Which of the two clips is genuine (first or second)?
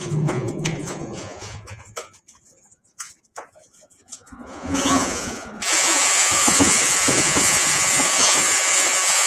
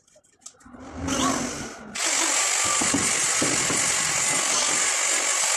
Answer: second